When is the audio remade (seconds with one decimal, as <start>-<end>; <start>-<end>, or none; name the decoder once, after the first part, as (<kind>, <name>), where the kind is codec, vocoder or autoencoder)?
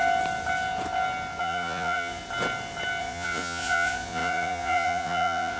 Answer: 1.4-2.2 (vocoder, Vocos); 3.0-5.6